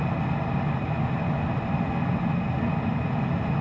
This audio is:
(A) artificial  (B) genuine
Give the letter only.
B